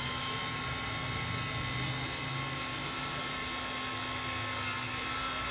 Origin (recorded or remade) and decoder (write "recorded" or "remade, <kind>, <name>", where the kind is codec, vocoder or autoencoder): recorded